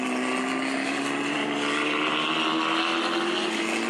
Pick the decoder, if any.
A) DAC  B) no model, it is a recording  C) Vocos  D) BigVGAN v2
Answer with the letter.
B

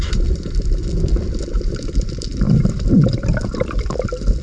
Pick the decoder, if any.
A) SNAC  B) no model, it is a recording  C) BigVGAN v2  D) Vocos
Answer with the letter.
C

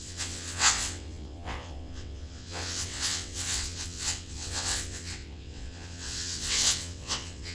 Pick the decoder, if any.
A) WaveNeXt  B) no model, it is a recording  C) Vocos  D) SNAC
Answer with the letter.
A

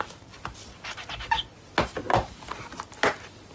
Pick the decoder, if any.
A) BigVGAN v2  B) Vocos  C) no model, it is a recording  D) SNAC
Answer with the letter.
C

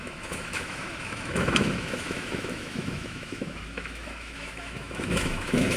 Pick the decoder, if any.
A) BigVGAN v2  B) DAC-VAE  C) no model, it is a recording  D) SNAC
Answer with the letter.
B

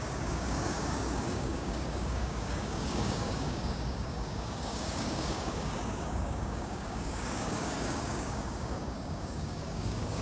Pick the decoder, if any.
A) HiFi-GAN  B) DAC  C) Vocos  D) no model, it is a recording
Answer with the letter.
B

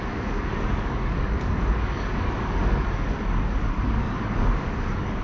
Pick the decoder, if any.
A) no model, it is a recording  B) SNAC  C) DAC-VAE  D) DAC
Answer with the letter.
D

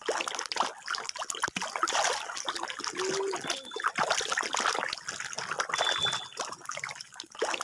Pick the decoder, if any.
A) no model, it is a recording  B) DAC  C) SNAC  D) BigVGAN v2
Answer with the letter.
A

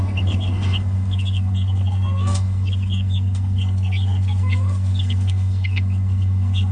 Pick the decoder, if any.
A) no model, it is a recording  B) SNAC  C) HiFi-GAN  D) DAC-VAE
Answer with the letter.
B